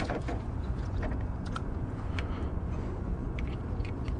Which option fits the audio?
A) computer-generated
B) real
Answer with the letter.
A